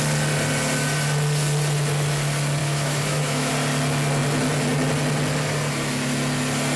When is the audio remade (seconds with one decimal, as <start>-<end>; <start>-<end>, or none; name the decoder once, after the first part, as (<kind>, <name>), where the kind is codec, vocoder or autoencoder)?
2.6-3.5 (autoencoder, DAC-VAE)